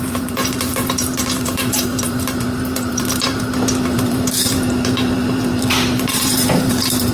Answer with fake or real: fake